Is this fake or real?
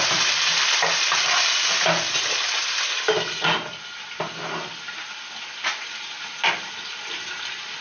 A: real